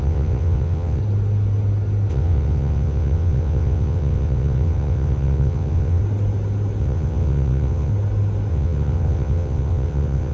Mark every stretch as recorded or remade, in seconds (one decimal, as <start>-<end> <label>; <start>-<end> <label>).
0.0-1.0 remade; 1.0-2.1 recorded; 2.1-6.0 remade; 6.0-6.8 recorded; 6.8-7.9 remade; 7.9-8.5 recorded; 8.5-10.3 remade